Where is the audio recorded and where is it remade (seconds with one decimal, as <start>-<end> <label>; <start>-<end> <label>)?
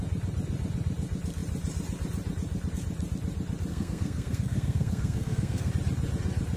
0.0-3.7 recorded; 3.7-5.7 remade; 5.7-6.6 recorded